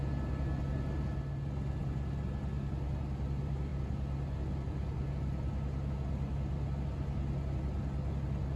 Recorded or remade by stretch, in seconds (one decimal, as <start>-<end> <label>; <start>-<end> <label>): 0.0-8.6 recorded